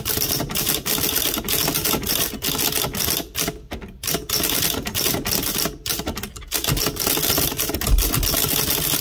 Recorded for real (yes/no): yes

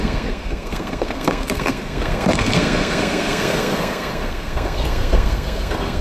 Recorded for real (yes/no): no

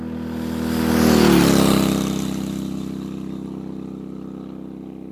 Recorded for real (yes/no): yes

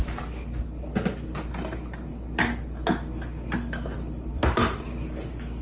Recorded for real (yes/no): yes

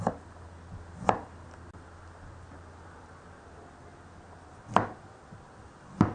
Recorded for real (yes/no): yes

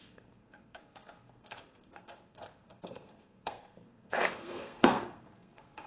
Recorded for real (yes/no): no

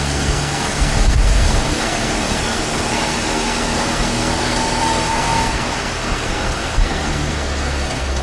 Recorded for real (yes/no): no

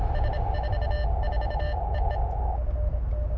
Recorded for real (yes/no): yes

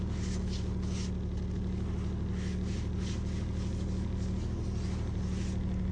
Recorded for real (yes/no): yes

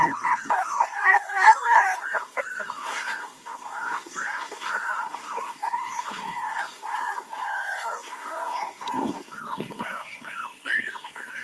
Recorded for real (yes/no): no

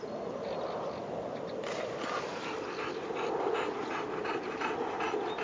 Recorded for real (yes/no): yes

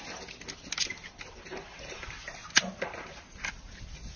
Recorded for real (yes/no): yes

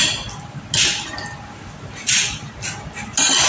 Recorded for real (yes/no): yes